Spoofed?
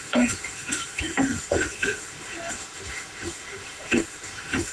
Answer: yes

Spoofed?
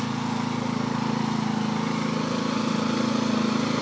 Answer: no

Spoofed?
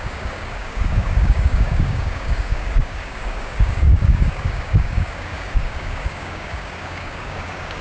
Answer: yes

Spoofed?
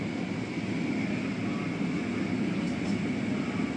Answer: no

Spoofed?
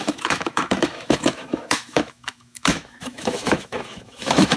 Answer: yes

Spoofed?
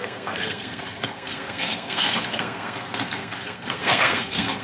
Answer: yes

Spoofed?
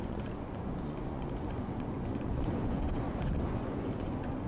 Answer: yes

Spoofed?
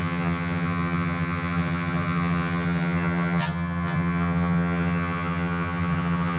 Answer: yes